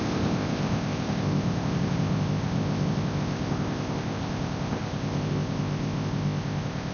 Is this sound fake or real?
fake